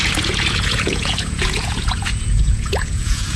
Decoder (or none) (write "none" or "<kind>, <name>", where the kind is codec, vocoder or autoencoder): vocoder, Vocos